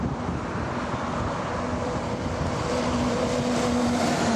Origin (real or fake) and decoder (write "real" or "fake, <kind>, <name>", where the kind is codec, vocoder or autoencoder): real